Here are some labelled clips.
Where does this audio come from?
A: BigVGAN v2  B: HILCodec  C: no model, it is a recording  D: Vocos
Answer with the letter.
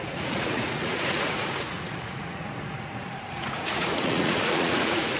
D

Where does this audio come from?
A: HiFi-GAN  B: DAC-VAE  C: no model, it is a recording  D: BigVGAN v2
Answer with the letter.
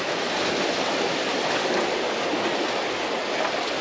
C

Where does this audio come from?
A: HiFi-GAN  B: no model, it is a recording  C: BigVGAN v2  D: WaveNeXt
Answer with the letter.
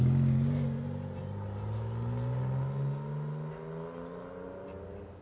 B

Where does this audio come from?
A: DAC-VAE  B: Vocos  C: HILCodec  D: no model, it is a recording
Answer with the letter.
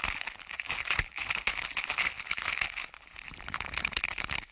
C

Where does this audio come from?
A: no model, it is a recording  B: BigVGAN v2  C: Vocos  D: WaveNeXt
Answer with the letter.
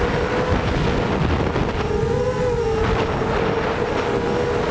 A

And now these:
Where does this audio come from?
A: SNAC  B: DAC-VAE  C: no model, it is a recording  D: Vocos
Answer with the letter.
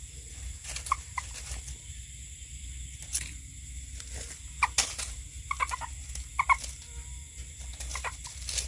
C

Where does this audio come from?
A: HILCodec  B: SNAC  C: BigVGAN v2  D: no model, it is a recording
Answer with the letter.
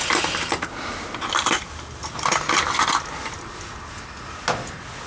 D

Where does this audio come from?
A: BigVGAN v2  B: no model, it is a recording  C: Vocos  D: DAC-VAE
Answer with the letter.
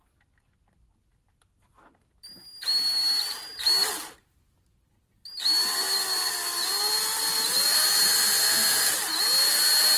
B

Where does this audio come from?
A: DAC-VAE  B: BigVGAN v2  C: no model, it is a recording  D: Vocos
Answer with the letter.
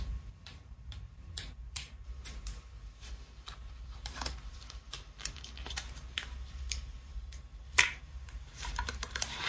B